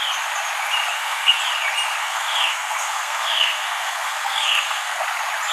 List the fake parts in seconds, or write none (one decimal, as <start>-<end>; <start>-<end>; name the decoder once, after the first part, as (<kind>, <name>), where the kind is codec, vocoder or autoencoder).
0.9-1.4 (codec, SNAC); 2.0-5.0